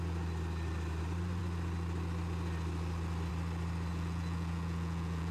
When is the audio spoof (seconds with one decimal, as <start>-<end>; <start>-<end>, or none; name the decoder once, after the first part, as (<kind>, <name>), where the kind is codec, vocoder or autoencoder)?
3.9-5.3 (vocoder, Vocos)